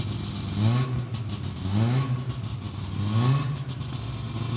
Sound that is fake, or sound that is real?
real